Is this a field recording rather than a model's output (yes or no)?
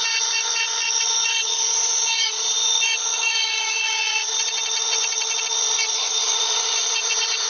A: no